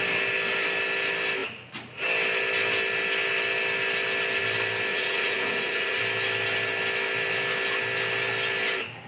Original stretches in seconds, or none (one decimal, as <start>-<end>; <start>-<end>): 0.0-4.9; 6.0-9.1